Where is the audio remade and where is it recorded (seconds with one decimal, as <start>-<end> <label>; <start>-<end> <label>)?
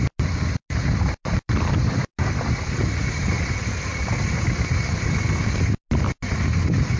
0.0-7.0 recorded